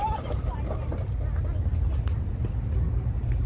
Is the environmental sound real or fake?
real